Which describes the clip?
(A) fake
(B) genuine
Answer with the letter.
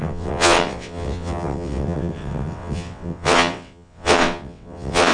A